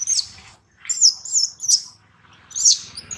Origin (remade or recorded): recorded